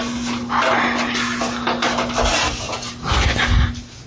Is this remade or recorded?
recorded